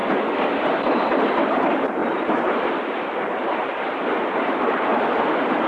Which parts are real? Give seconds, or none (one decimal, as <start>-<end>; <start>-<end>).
0.0-5.7